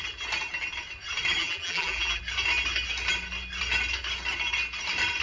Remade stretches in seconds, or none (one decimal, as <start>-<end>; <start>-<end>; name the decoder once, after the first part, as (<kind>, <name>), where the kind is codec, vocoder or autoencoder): 1.4-2.2 (vocoder, BigVGAN v2)